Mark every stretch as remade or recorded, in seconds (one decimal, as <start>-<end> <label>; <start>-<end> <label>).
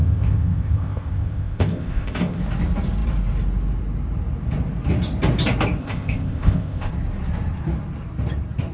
0.0-2.4 remade; 2.4-5.8 recorded; 5.8-6.9 remade; 6.9-8.7 recorded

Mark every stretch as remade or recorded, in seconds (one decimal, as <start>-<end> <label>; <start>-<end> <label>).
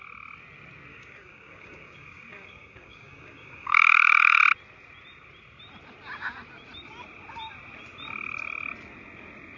0.0-0.9 recorded; 0.9-4.4 remade; 4.4-9.6 recorded